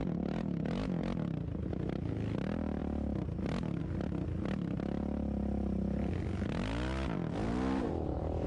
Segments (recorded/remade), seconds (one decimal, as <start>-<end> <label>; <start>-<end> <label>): 0.0-8.5 recorded

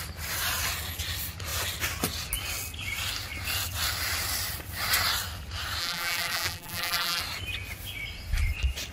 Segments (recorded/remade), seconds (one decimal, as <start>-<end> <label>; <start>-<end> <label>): 0.0-5.8 recorded; 5.8-7.2 remade; 7.2-8.9 recorded

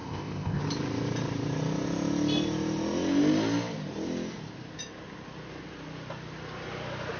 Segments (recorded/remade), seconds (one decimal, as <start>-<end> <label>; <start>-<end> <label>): 0.0-0.6 remade; 0.6-7.2 recorded

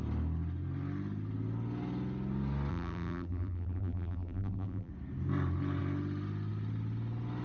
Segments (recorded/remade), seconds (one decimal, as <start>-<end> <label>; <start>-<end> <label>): 0.0-2.7 recorded; 2.7-4.9 remade; 4.9-7.4 recorded

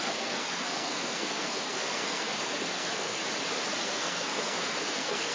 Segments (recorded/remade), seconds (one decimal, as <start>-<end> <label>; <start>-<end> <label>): 0.0-3.2 remade; 3.2-3.8 recorded; 3.8-5.3 remade

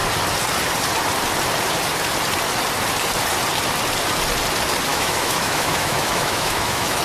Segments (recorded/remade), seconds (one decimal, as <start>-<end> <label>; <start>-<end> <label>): 0.0-4.9 recorded; 4.9-7.0 remade